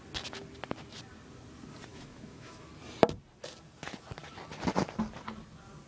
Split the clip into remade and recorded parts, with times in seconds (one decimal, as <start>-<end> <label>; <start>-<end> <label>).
0.0-1.9 recorded; 1.9-2.7 remade; 2.7-5.9 recorded